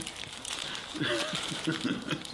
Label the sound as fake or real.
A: real